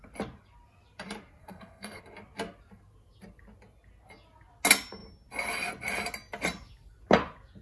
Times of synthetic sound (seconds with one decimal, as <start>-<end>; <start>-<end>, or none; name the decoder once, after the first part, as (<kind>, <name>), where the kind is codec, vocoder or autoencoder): 1.4-2.0 (codec, SNAC)